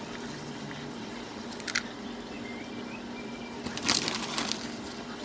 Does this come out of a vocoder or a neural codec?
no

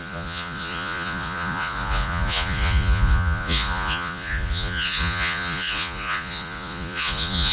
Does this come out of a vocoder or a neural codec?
yes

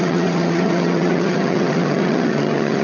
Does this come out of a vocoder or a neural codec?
yes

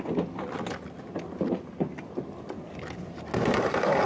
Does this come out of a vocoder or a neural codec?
no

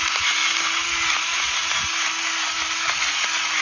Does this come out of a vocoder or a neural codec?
no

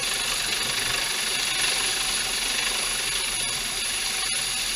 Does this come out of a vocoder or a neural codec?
no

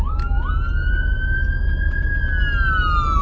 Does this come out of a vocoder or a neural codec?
no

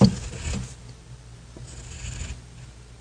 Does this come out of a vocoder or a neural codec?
no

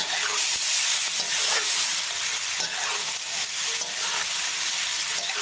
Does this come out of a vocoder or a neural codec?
no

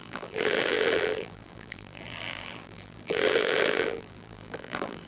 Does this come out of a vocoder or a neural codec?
yes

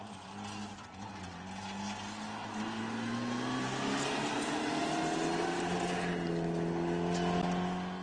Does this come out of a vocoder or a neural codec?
no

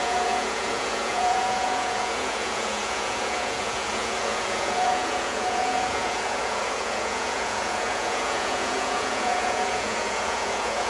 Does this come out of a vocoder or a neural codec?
yes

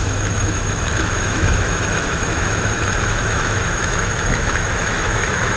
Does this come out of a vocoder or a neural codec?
yes